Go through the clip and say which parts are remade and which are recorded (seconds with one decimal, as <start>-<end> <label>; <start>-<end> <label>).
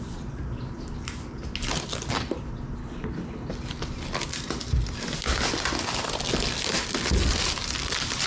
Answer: 0.0-2.8 recorded; 2.8-3.5 remade; 3.5-8.3 recorded